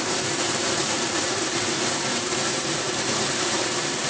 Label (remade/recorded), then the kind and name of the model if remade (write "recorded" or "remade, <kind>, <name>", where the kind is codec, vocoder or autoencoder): remade, vocoder, BigVGAN v2